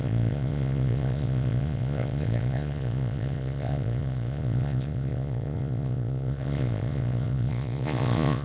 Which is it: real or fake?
fake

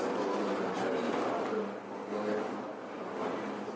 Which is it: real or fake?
real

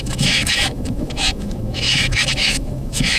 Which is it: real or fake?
fake